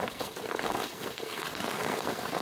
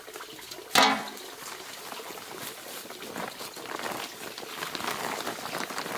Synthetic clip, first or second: first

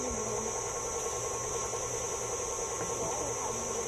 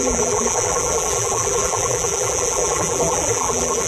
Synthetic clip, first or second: second